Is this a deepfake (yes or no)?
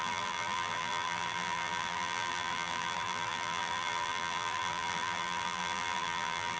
yes